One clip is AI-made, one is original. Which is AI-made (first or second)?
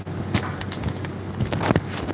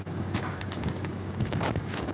second